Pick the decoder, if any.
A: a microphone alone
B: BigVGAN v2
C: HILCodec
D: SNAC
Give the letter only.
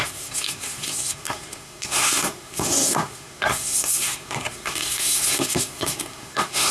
D